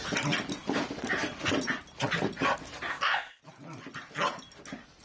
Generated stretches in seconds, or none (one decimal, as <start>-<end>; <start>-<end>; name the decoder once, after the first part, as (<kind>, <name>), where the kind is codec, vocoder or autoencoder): 2.9-3.4 (codec, ZipCodec)